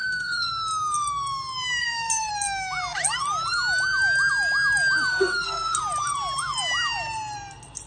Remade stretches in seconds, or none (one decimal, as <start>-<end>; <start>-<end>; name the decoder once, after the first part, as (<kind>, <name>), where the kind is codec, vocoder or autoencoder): 0.0-0.5 (codec, SNAC); 1.8-2.3; 5.1-5.8